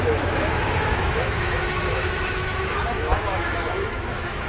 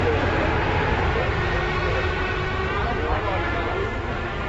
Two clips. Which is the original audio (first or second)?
second